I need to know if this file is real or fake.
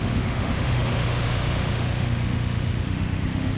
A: fake